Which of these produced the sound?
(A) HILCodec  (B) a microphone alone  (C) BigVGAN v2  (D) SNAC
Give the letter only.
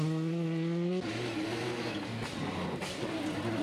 B